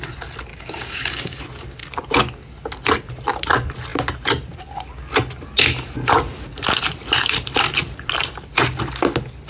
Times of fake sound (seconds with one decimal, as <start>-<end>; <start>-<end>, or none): 0.5-1.4